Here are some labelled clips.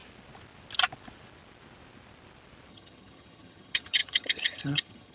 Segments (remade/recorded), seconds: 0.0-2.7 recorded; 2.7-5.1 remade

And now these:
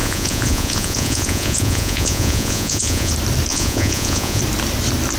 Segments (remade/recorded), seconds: 0.0-3.1 remade; 3.1-3.5 recorded; 3.5-4.4 remade; 4.4-5.2 recorded

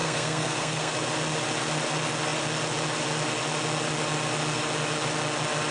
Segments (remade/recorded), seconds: 0.0-0.9 remade; 0.9-5.7 recorded

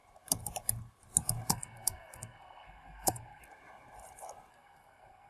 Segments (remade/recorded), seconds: 0.0-1.5 recorded; 1.5-3.4 remade; 3.4-4.5 recorded; 4.5-5.3 remade

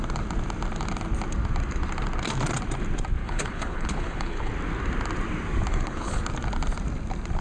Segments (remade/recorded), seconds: 0.0-3.2 recorded; 3.2-4.5 remade; 4.5-5.7 recorded; 5.7-6.2 remade; 6.2-7.4 recorded

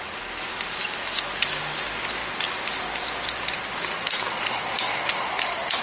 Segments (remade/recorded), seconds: 0.0-5.8 recorded

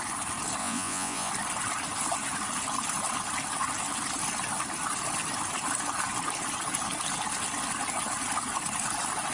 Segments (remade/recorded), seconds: 0.0-0.6 recorded; 0.6-1.3 remade; 1.3-9.3 recorded

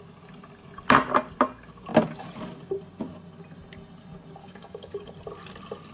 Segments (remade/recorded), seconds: 0.0-4.4 recorded; 4.4-5.1 remade; 5.1-5.9 recorded